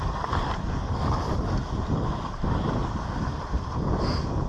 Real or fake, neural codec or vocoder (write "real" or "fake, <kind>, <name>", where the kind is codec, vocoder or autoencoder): real